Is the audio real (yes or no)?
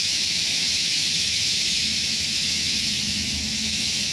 no